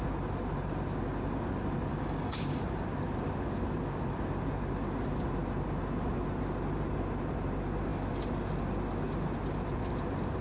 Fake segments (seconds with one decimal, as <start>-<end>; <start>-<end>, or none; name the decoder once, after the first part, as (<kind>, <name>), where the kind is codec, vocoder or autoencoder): 1.9-2.6 (codec, DAC)